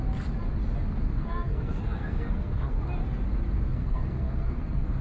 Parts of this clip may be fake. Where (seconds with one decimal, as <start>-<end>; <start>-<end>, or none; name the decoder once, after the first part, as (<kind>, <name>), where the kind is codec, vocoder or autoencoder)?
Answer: 1.1-2.8 (codec, SNAC); 3.7-5.0